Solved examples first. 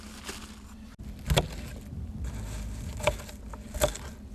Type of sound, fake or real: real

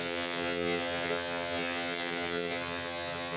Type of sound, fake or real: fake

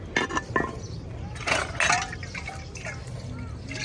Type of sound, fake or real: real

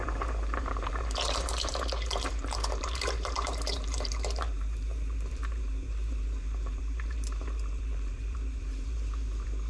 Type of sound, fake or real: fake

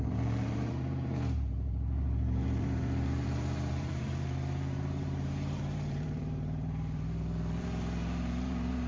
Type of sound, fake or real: fake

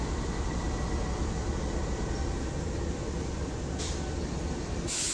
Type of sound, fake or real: real